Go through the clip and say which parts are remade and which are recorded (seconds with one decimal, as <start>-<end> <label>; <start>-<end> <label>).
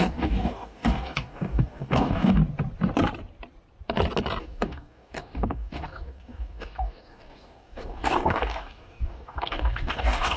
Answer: 0.0-2.4 remade; 2.4-4.4 recorded; 4.4-10.4 remade